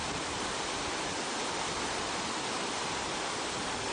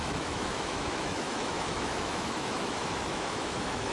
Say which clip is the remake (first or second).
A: second